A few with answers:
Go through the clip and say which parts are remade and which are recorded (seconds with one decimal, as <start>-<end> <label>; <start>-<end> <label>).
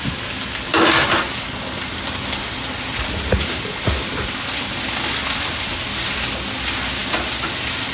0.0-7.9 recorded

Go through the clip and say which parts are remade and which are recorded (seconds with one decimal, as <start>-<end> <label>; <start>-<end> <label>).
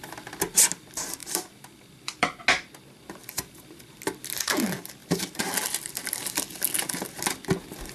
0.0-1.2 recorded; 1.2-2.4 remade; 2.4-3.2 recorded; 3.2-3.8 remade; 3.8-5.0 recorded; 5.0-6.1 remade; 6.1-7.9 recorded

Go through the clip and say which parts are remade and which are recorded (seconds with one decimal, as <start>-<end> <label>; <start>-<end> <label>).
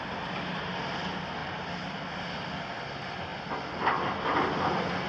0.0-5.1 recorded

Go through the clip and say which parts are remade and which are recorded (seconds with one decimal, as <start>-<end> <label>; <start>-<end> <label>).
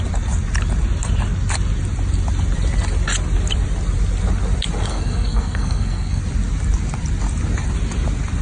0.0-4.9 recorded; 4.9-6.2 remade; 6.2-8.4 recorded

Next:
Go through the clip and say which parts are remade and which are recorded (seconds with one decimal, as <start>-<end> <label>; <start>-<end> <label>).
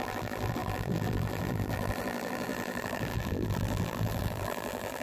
0.0-5.0 remade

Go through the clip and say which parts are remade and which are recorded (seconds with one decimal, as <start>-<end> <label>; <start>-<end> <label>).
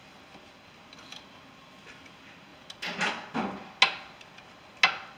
0.0-5.2 recorded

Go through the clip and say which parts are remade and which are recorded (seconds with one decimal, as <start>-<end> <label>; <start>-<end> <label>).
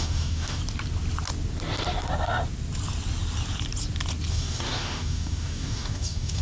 0.0-0.6 remade; 0.6-4.3 recorded; 4.3-6.4 remade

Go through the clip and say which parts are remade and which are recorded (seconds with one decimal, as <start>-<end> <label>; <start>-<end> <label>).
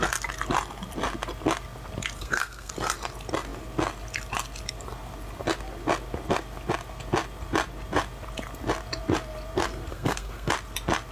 0.0-2.2 recorded; 2.2-2.7 remade; 2.7-9.9 recorded; 9.9-10.5 remade; 10.5-11.1 recorded